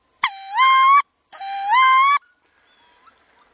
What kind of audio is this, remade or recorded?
recorded